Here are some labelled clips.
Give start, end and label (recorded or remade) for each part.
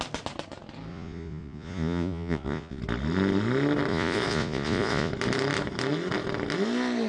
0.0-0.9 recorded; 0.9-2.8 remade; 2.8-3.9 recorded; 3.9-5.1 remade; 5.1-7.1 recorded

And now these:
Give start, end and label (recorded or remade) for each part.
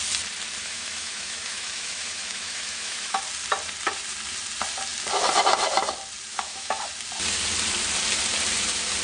0.0-0.6 recorded; 0.6-3.2 remade; 3.2-6.3 recorded; 6.3-6.8 remade; 6.8-9.0 recorded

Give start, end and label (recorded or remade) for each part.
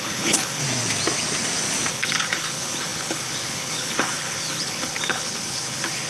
0.0-0.6 remade; 0.6-1.9 recorded; 1.9-6.1 remade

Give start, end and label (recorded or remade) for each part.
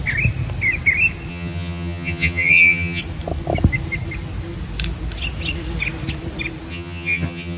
0.0-1.3 recorded; 1.3-3.0 remade; 3.0-6.7 recorded; 6.7-7.6 remade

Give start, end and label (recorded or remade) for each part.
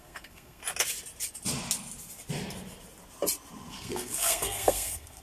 0.0-0.6 remade; 0.6-3.7 recorded; 3.7-5.2 remade